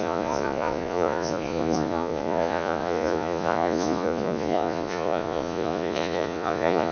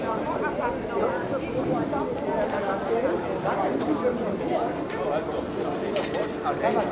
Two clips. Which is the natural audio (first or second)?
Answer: second